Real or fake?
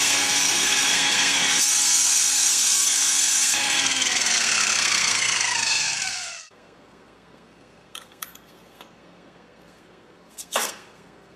fake